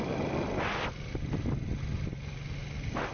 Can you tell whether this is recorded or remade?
recorded